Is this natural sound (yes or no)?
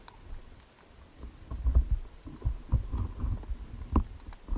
yes